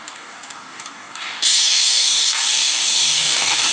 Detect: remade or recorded remade